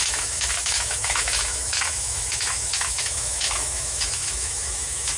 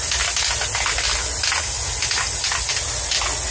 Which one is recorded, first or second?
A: second